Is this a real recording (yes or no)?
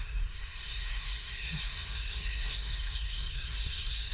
no